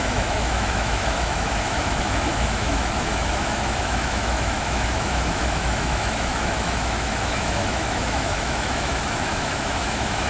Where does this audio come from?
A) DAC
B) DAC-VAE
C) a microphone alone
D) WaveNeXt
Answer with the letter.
B